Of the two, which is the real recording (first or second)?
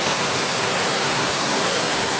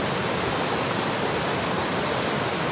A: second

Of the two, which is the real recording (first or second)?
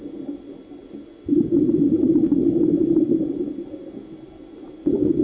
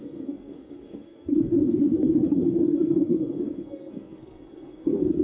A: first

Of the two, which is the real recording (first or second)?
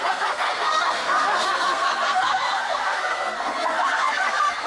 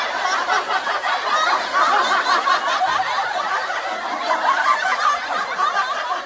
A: second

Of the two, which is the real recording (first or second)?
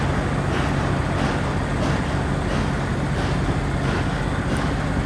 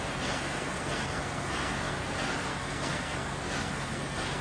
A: first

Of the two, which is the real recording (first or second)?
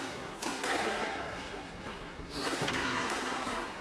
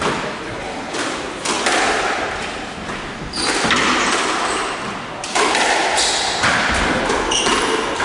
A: second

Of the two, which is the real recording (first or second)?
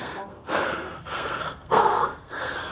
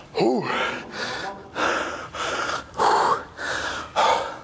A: second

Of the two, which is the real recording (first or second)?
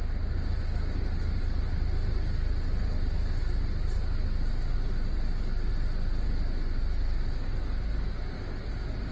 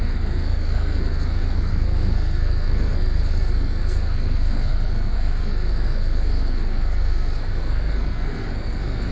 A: first